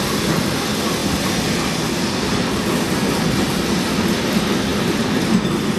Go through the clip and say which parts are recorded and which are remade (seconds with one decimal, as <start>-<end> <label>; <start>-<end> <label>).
0.0-5.8 recorded